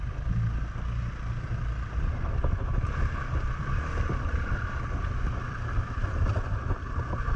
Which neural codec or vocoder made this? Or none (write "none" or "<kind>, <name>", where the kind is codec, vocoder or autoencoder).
none